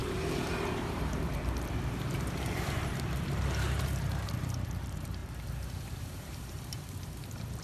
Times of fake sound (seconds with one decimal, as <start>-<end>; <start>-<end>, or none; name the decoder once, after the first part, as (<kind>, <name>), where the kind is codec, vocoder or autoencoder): 0.0-7.6 (vocoder, BigVGAN v2)